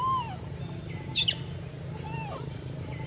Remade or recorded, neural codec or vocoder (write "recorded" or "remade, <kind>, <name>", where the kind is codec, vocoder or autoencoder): recorded